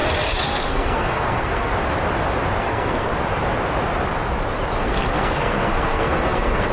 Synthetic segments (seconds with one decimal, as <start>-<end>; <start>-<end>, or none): 0.7-1.7; 2.6-3.1; 4.8-6.7